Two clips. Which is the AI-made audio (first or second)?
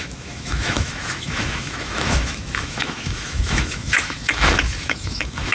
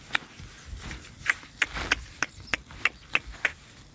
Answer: first